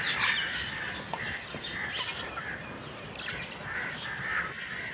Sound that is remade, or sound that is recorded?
recorded